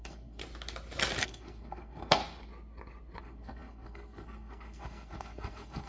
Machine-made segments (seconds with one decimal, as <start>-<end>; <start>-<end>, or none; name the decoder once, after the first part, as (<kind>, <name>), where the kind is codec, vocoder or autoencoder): 0.0-0.4 (codec, SNAC); 1.2-2.2; 3.2-5.9

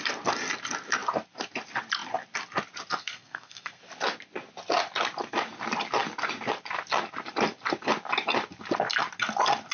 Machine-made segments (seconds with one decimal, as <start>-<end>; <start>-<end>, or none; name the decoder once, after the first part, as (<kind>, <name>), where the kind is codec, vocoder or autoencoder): 3.0-3.8 (codec, SNAC)

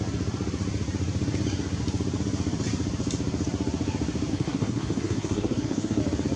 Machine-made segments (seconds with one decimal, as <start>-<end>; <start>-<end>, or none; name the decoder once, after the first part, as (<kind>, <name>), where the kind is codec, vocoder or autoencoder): 4.3-6.0 (codec, SNAC)